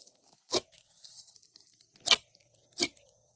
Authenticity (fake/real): real